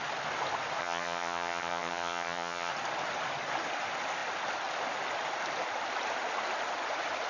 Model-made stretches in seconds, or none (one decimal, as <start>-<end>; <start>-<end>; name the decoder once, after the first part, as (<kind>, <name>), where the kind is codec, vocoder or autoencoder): 0.8-2.7 (vocoder, HiFi-GAN)